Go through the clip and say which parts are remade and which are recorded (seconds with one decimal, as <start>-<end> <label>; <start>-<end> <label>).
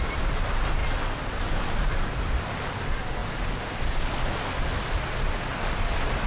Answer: 0.0-6.3 recorded